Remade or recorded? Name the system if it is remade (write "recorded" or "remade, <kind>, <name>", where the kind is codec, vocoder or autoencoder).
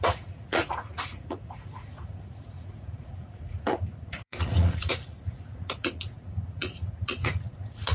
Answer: remade, vocoder, Vocos